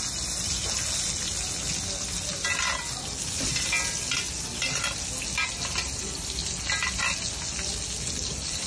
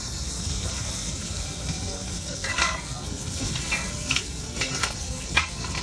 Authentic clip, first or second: first